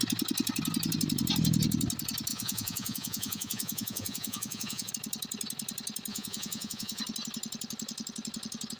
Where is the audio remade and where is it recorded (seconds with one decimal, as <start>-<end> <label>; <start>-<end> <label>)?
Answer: 0.0-2.3 recorded; 2.3-4.9 remade; 4.9-6.1 recorded; 6.1-7.0 remade; 7.0-8.8 recorded